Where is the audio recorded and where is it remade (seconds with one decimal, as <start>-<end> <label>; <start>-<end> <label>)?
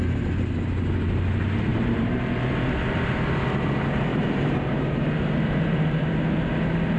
0.0-1.7 recorded; 1.7-2.5 remade; 2.5-4.1 recorded; 4.1-6.1 remade; 6.1-7.0 recorded